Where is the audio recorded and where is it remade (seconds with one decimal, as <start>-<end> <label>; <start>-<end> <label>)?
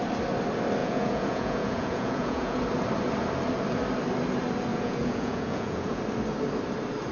0.0-0.8 recorded; 0.8-2.6 remade; 2.6-4.7 recorded; 4.7-6.0 remade; 6.0-7.1 recorded